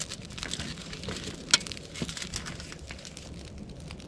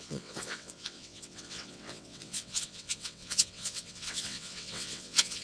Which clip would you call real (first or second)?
first